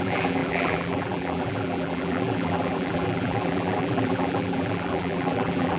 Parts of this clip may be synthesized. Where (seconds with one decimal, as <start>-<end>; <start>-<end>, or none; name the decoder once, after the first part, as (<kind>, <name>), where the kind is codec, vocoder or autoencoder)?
0.0-5.8 (vocoder, BigVGAN v2)

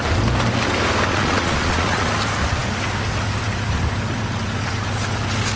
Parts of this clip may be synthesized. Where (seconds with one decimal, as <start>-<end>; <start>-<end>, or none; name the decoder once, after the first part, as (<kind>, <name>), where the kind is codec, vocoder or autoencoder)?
1.1-2.1 (vocoder, Vocos)

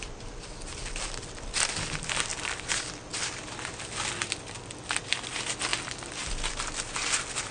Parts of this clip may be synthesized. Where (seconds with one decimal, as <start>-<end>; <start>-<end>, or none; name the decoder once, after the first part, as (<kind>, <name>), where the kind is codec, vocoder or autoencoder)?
none

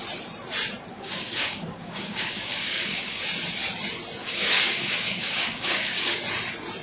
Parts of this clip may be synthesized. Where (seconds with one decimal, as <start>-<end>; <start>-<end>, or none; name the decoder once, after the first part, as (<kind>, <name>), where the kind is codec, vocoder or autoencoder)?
0.9-3.2 (codec, DAC); 4.2-6.2

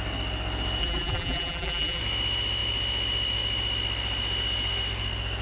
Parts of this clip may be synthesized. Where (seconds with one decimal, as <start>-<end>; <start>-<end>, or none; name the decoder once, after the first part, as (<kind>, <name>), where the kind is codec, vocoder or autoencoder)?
0.8-2.0 (vocoder, BigVGAN v2)

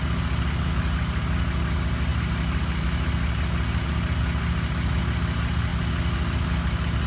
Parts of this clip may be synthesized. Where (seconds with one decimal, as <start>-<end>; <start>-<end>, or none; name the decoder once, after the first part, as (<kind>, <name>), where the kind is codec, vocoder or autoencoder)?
none

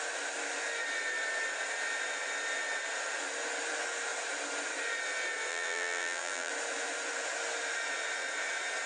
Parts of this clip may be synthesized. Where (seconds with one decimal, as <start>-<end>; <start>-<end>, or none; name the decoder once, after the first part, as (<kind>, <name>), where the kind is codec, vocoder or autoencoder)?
5.5-6.5 (vocoder, BigVGAN v2)

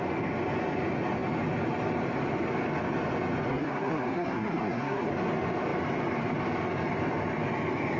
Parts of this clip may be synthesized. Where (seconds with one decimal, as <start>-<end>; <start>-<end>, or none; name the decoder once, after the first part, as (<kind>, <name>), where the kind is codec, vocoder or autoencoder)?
3.5-5.1 (codec, SNAC)